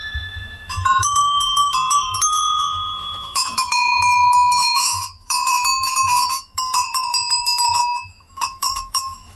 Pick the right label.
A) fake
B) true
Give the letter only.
A